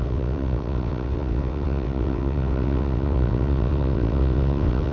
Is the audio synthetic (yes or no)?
yes